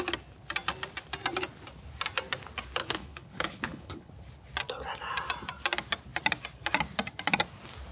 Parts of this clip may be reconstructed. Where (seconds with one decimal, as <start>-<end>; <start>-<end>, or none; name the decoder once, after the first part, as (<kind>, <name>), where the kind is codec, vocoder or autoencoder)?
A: 2.8-4.1 (codec, HILCodec)